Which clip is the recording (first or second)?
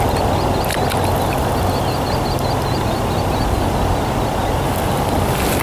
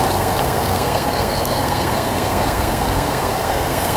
first